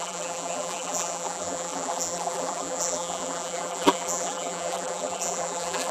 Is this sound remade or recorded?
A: remade